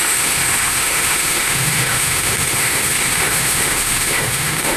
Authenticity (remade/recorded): remade